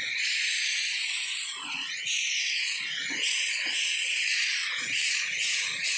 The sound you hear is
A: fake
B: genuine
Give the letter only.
A